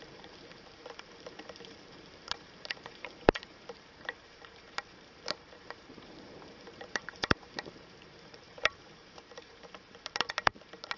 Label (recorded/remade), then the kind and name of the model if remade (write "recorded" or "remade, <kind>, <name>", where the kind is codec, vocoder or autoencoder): remade, vocoder, BigVGAN v2